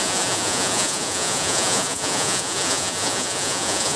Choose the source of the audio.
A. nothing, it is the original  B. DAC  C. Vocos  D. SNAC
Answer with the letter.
C